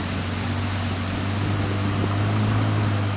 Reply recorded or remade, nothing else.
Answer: recorded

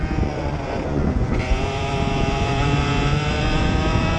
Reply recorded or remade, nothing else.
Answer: remade